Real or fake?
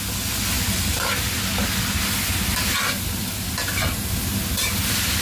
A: real